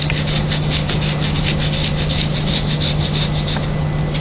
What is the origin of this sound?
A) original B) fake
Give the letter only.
A